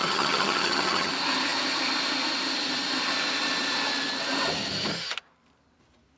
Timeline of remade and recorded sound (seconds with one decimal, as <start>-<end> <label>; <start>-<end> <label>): 0.0-1.1 remade; 1.1-6.2 recorded